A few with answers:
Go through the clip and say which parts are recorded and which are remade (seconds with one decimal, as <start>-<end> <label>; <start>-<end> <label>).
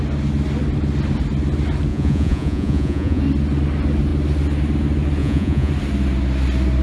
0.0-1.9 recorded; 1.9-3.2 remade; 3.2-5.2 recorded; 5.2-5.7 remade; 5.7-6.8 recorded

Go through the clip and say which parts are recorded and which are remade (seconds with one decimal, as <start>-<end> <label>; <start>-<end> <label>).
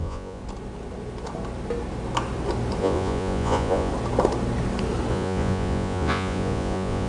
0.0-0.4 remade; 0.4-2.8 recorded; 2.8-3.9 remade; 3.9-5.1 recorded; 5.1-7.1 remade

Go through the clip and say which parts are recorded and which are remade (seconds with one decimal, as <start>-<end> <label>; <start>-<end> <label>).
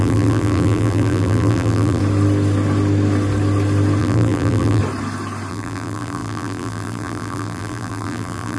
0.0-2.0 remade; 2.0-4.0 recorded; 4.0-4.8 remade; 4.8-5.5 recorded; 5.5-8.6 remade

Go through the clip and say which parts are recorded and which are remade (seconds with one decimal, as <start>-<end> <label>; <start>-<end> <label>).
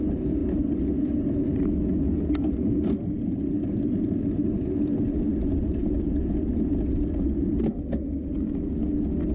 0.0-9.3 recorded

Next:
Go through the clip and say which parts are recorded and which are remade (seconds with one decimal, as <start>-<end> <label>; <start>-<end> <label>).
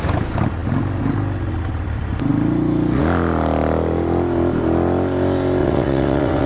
0.0-5.6 recorded; 5.6-6.5 remade